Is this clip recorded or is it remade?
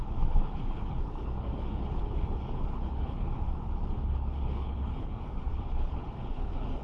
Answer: remade